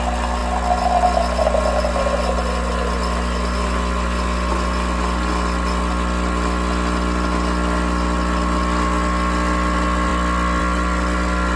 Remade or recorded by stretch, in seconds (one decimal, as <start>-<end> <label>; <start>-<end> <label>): 0.0-11.6 recorded